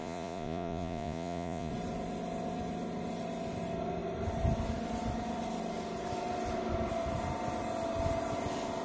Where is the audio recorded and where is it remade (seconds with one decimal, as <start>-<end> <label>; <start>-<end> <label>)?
0.0-1.7 remade; 1.7-8.8 recorded